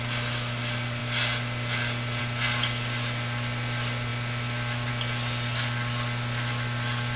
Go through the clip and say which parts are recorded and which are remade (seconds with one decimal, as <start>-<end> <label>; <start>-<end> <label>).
0.0-7.2 recorded